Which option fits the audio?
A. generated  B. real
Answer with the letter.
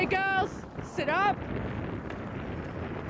B